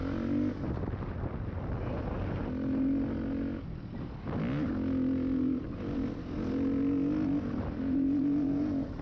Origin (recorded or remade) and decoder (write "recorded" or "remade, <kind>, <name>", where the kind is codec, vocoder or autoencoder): recorded